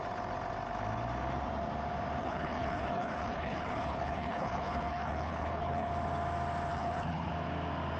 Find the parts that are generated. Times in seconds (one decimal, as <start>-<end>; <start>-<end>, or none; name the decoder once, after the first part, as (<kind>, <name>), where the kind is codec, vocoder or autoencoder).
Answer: 2.2-5.9 (codec, HILCodec); 6.7-7.3